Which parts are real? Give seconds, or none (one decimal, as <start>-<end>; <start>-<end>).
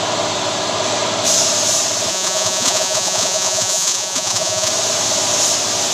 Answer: 0.0-2.1; 4.7-5.9